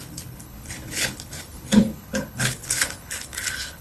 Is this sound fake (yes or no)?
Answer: yes